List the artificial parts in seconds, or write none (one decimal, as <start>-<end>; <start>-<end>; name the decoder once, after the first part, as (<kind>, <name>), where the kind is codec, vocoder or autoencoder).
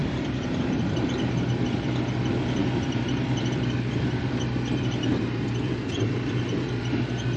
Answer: 0.0-2.2 (vocoder, BigVGAN v2); 2.6-7.0